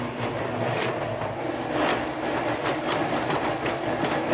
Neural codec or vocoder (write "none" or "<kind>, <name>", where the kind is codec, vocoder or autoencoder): none